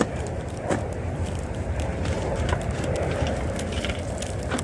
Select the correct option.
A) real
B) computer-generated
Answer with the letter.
A